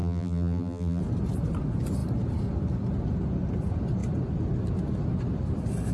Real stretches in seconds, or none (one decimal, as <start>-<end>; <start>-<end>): 1.0-5.9